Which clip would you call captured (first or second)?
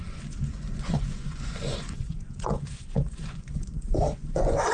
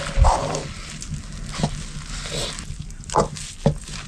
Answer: second